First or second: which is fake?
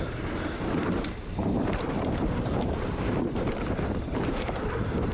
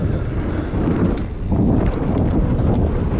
first